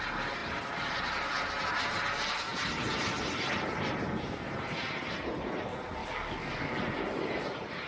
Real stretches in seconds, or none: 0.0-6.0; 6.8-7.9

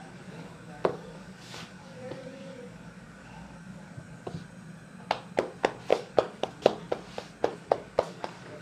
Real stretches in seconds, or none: 4.3-5.9; 6.5-7.5